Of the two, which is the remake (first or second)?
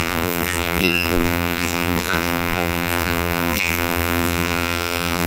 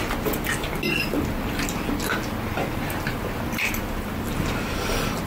first